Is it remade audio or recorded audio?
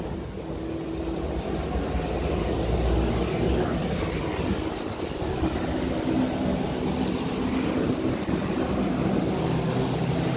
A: recorded